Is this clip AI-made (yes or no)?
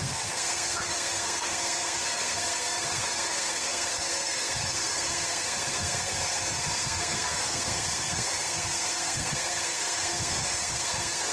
yes